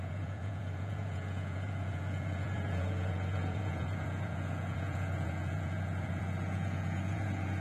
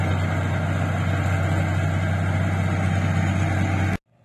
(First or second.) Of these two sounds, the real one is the second